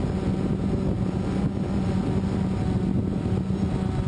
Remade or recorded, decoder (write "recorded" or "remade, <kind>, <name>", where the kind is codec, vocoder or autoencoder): recorded